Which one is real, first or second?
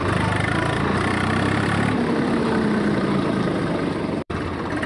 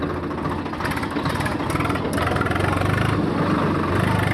second